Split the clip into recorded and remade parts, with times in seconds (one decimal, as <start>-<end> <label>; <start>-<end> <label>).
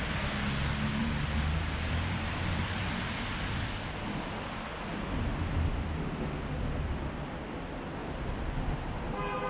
0.0-1.0 recorded; 1.0-2.9 remade; 2.9-8.0 recorded; 8.0-9.1 remade; 9.1-9.5 recorded